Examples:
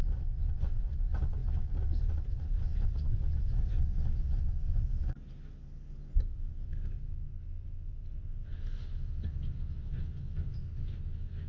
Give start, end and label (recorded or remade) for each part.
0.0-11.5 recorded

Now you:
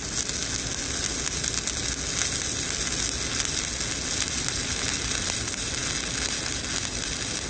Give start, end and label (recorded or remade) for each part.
0.0-7.5 recorded

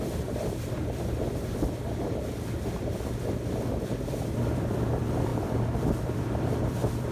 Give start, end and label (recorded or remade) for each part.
0.0-7.1 remade

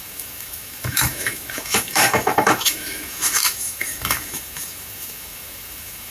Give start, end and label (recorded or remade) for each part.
0.0-6.1 remade